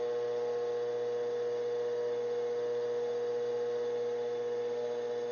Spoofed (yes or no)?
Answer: no